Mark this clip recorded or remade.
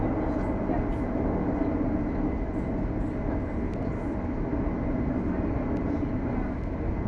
recorded